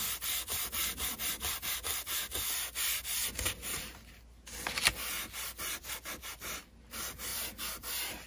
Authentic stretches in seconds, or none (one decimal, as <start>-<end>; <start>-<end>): 0.0-8.3